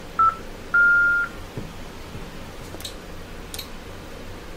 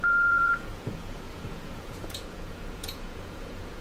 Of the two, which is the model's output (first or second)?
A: second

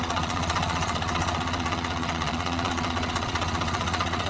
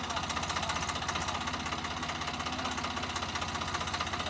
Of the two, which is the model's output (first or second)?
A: first